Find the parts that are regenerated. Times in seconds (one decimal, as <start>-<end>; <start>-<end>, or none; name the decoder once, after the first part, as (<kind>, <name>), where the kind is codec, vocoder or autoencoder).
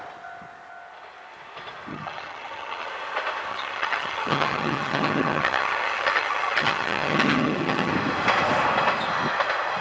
1.9-2.9 (vocoder, HiFi-GAN); 3.5-7.9